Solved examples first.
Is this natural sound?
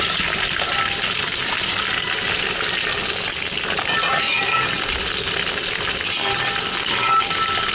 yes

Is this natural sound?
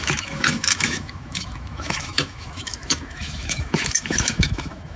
no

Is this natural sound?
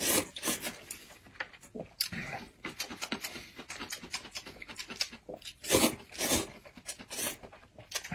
yes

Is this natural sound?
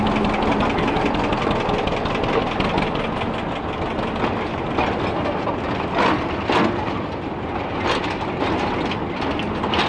yes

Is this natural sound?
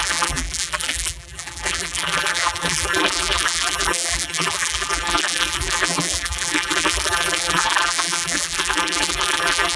no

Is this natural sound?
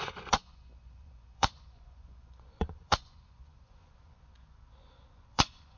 no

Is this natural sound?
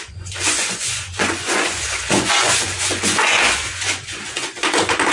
no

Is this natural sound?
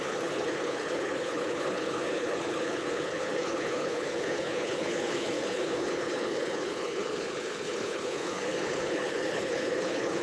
no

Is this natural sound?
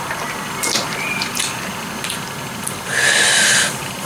yes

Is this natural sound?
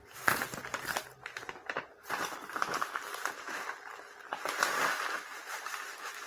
yes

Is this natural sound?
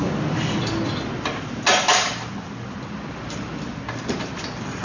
yes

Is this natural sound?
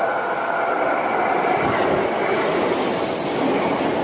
yes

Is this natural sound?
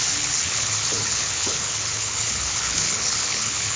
no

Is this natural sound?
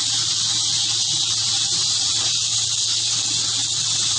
yes